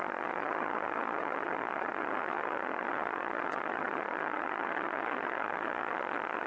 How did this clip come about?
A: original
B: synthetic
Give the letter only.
B